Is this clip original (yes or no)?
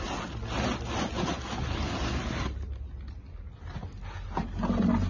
yes